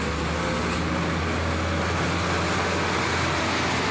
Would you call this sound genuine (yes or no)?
yes